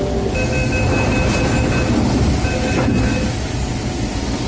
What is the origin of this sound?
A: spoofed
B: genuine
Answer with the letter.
B